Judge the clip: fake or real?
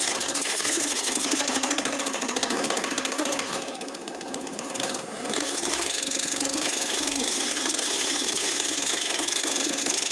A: fake